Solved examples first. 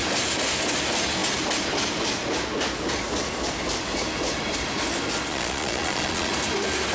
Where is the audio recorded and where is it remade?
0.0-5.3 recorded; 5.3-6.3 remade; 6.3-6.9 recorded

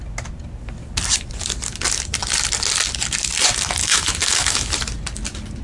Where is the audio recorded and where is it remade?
0.0-3.8 recorded; 3.8-4.7 remade; 4.7-5.6 recorded

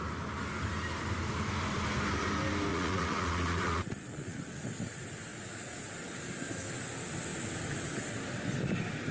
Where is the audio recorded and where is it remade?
0.0-2.7 recorded; 2.7-4.6 remade; 4.6-5.3 recorded; 5.3-5.9 remade; 5.9-9.1 recorded

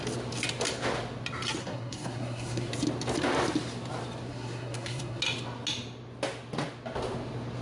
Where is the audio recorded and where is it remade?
0.0-1.6 recorded; 1.6-2.7 remade; 2.7-4.3 recorded; 4.3-5.2 remade; 5.2-7.6 recorded

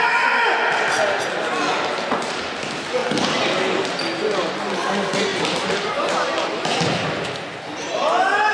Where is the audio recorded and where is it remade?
0.0-8.5 recorded

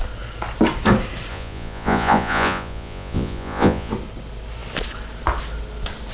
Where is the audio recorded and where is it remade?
0.0-1.3 recorded; 1.3-3.9 remade; 3.9-6.1 recorded

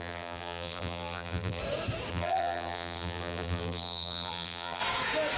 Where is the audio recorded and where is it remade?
0.0-1.6 remade; 1.6-2.1 recorded; 2.1-4.8 remade; 4.8-5.4 recorded